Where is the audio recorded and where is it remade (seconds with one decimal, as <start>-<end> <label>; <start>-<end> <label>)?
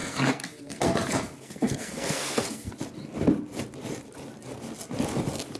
0.0-2.7 remade; 2.7-5.6 recorded